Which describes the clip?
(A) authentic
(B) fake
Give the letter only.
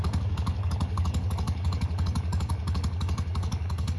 B